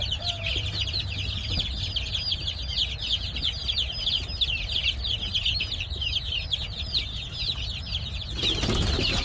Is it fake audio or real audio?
real